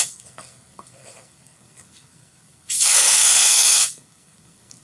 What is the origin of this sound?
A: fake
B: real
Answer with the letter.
A